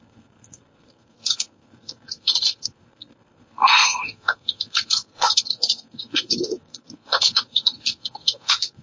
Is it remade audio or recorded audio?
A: remade